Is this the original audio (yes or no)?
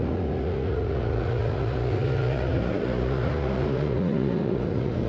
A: no